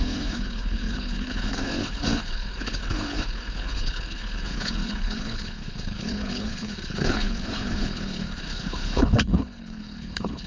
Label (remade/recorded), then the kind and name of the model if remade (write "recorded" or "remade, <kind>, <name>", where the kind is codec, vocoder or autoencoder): remade, codec, HILCodec